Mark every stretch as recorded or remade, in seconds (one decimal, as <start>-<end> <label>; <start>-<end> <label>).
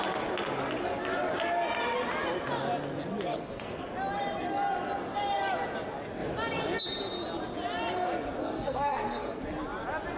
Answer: 0.0-3.3 recorded; 3.3-3.8 remade; 3.8-8.4 recorded; 8.4-9.4 remade; 9.4-10.2 recorded